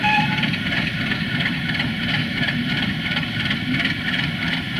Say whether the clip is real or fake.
fake